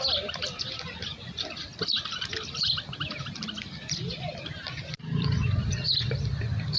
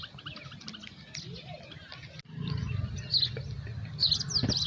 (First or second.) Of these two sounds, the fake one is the first